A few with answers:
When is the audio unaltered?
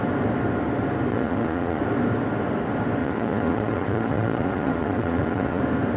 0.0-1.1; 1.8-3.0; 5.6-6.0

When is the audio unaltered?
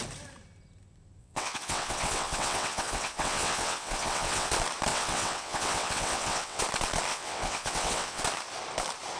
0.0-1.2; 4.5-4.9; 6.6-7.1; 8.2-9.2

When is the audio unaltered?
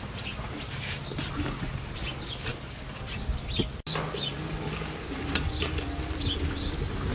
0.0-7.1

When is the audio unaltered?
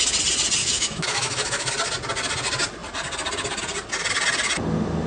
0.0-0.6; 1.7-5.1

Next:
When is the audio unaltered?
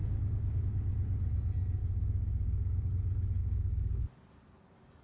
0.6-1.8; 2.9-3.4; 4.0-5.0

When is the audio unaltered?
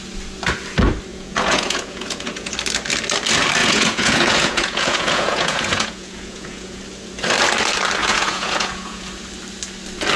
0.0-1.1; 2.5-3.6; 6.8-8.0; 9.1-10.2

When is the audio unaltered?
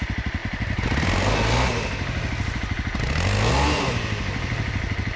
0.0-5.2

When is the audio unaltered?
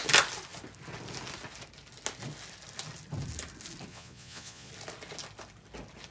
0.0-3.9; 4.7-6.1